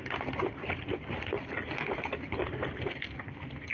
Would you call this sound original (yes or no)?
yes